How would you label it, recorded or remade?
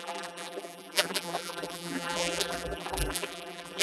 remade